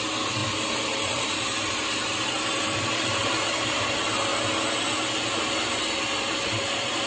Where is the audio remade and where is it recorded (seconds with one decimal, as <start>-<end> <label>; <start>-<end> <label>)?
0.0-0.4 recorded; 0.4-3.9 remade; 3.9-7.1 recorded